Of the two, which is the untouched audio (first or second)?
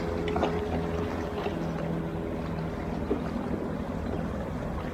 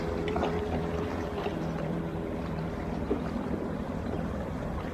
first